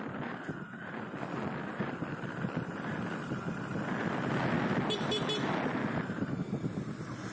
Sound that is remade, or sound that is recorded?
recorded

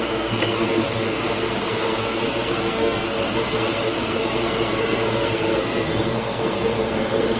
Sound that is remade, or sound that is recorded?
remade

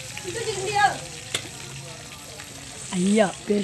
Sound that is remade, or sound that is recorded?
recorded